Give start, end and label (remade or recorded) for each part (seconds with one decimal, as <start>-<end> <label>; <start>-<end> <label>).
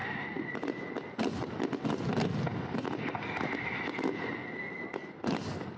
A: 0.0-5.8 recorded